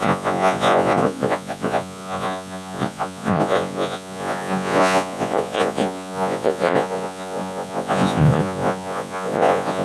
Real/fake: fake